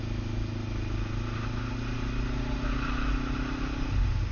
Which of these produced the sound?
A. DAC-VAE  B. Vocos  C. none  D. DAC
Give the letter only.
C